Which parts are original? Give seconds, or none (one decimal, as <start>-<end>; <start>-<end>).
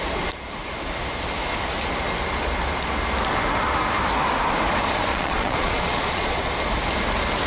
0.0-5.1; 6.5-7.5